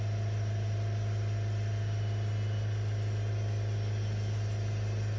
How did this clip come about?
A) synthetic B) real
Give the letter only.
B